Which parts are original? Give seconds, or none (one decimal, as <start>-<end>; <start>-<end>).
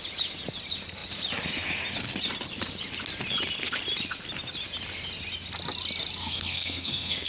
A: 0.0-6.2